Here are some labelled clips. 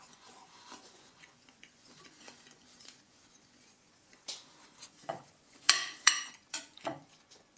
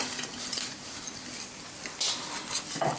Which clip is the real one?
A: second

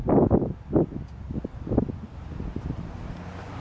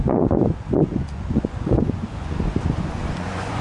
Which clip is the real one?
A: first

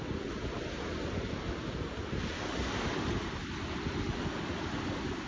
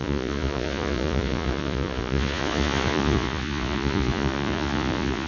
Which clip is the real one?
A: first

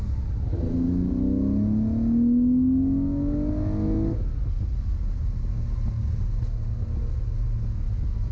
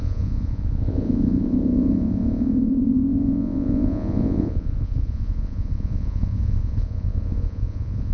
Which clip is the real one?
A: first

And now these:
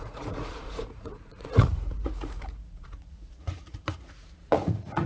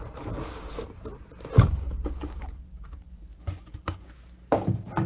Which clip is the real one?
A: second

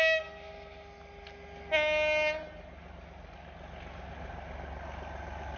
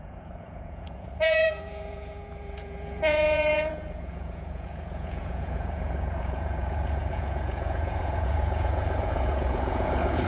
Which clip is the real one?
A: first